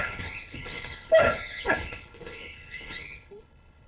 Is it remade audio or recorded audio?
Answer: remade